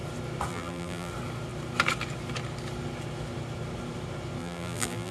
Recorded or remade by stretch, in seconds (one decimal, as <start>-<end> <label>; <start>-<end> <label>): 0.0-0.5 recorded; 0.5-1.1 remade; 1.1-4.4 recorded; 4.4-5.1 remade